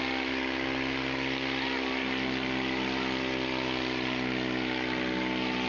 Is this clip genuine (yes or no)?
yes